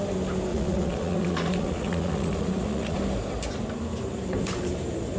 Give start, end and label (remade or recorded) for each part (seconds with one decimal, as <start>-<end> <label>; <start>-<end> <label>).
0.0-0.5 recorded; 0.5-3.0 remade; 3.0-5.2 recorded